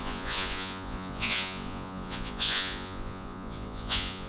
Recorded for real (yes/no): no